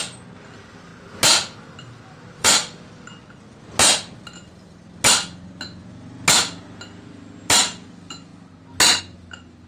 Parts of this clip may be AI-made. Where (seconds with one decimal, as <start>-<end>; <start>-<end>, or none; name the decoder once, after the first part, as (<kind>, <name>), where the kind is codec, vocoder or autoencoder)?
0.0-0.9 (vocoder, BigVGAN v2); 1.8-3.1; 7.5-8.3; 9.0-9.7